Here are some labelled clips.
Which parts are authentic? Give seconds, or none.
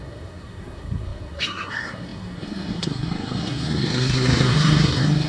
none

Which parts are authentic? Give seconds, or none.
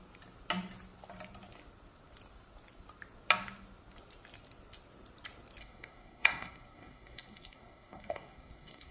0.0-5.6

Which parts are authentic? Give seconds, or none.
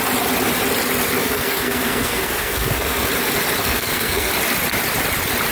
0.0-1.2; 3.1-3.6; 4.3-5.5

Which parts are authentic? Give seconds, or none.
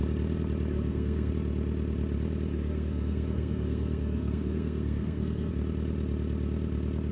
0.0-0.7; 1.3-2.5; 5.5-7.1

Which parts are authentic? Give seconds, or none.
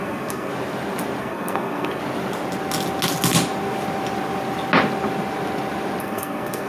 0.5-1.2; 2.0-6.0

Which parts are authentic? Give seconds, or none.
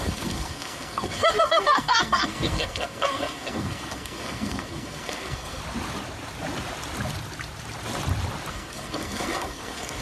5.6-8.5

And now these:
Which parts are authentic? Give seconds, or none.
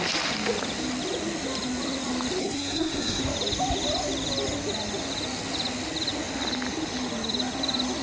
0.0-2.4; 3.2-8.0